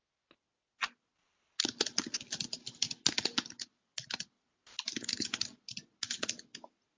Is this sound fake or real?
real